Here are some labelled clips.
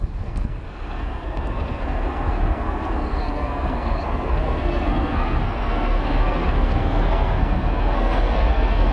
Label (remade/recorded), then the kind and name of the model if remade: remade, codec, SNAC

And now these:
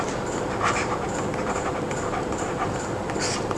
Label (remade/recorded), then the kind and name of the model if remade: remade, vocoder, BigVGAN v2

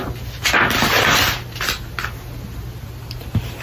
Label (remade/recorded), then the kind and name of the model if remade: recorded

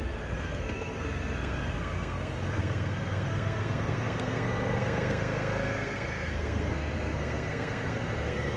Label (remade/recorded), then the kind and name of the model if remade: remade, codec, SNAC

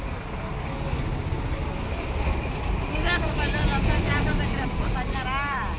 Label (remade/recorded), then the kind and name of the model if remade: recorded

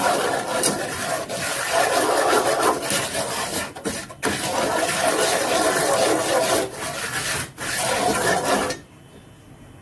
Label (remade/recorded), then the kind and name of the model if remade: recorded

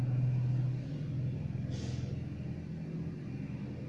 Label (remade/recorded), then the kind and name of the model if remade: recorded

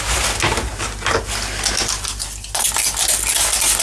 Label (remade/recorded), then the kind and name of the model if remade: recorded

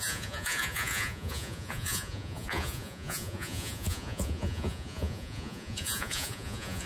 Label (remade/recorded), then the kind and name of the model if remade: remade, vocoder, Vocos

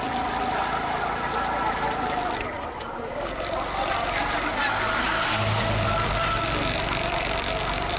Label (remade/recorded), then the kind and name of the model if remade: recorded